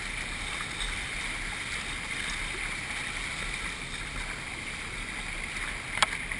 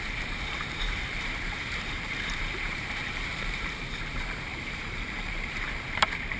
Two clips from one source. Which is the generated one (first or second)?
second